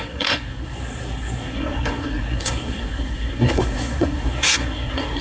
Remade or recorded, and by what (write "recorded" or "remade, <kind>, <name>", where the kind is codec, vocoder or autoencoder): remade, codec, SNAC